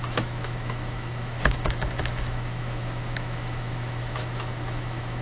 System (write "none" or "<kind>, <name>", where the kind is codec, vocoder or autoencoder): autoencoder, DAC-VAE